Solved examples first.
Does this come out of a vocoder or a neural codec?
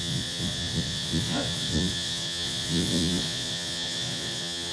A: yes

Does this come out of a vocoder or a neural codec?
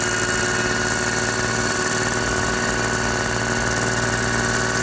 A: no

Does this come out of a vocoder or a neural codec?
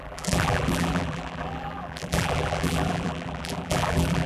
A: yes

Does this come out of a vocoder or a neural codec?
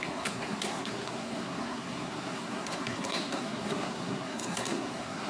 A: yes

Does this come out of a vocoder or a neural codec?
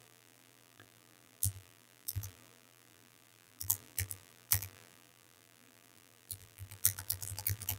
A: yes